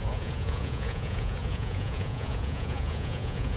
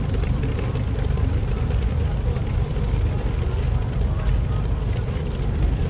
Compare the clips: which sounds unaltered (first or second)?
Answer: second